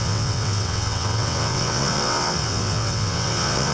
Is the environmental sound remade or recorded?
remade